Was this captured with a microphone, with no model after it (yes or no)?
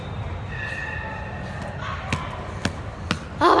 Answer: yes